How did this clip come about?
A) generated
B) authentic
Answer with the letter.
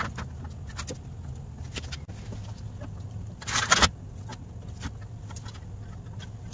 B